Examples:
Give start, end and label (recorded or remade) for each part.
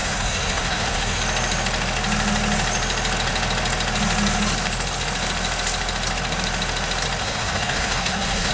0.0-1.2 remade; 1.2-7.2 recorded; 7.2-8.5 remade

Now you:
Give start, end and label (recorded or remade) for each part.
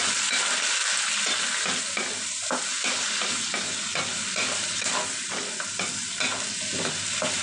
0.0-7.4 recorded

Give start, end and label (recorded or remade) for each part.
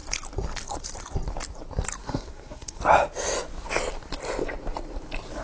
0.0-2.0 recorded; 2.0-2.8 remade; 2.8-5.4 recorded